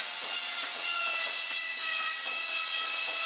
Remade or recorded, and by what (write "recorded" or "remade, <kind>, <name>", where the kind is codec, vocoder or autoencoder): remade, vocoder, WaveNeXt